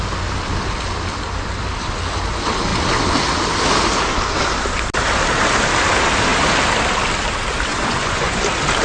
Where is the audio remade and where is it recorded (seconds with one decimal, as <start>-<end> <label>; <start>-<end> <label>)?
0.0-7.7 recorded; 7.7-8.4 remade; 8.4-8.8 recorded